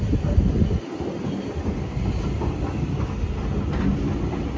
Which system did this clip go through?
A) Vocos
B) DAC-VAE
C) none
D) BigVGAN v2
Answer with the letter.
C